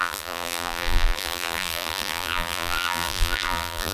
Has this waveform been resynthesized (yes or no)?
yes